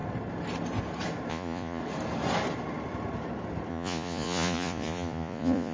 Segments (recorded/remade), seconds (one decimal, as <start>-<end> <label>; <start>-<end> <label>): 0.0-1.3 recorded; 1.3-1.8 remade; 1.8-3.7 recorded; 3.7-5.7 remade